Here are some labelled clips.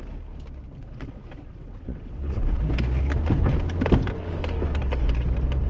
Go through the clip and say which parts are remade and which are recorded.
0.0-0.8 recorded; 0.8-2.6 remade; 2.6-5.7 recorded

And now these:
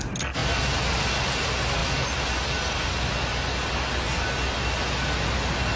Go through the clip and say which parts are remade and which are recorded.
0.0-5.8 recorded

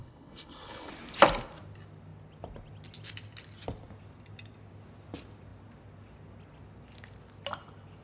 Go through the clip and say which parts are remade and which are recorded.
0.0-0.9 remade; 0.9-8.0 recorded

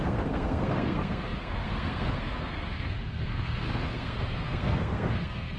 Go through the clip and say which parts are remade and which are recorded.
0.0-5.6 remade